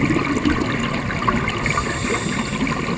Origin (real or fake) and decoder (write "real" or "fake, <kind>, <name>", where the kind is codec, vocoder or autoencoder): real